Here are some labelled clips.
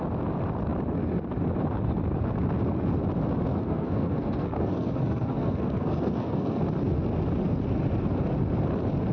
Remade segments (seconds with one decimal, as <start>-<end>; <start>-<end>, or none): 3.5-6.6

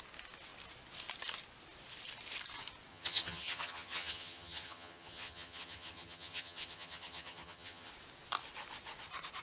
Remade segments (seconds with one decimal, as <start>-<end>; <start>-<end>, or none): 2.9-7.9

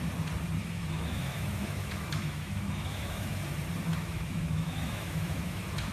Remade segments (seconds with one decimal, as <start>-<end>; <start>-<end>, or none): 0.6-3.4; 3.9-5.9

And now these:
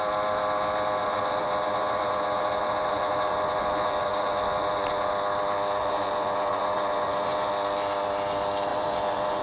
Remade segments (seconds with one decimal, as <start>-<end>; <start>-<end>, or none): 1.0-5.1; 5.8-7.5; 8.7-9.4

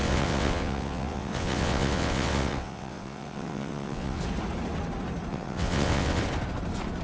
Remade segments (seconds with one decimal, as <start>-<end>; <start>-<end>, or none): 0.0-4.2; 5.3-6.2

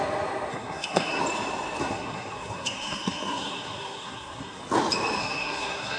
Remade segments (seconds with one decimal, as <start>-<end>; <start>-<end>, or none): 0.5-1.2; 1.8-4.6; 5.2-6.0

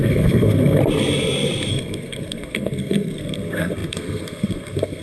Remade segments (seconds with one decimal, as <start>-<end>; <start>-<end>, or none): 0.0-0.8; 1.7-5.0